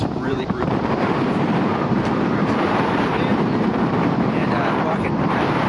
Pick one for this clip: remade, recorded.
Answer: remade